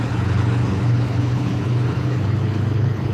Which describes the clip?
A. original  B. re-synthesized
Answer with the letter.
B